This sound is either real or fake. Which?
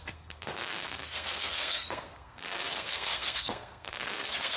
fake